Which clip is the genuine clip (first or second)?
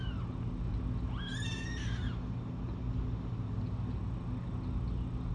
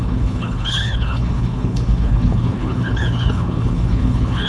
first